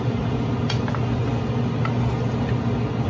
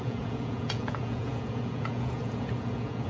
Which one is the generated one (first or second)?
second